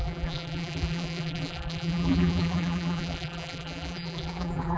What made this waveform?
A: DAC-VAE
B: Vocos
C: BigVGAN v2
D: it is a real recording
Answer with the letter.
C